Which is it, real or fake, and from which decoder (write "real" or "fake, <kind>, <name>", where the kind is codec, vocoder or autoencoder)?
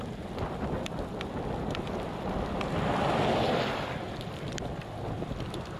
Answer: real